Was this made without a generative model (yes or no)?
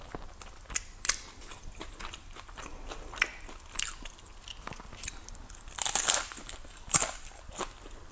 yes